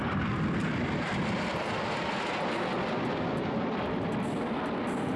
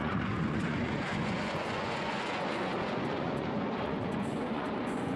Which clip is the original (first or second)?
first